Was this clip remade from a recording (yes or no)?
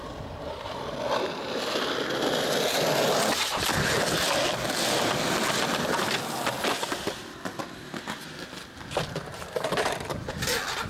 no